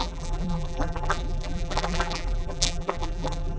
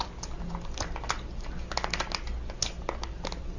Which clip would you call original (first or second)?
second